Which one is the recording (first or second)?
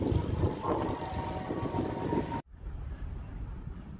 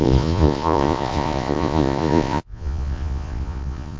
first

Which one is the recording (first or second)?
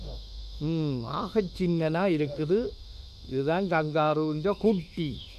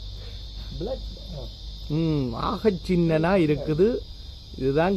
second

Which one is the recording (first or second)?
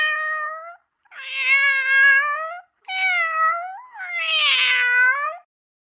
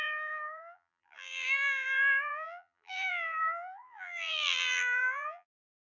first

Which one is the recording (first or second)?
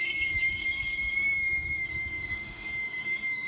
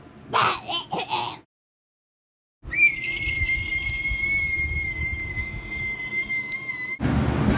second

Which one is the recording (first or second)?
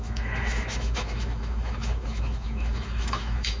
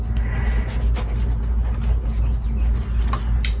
second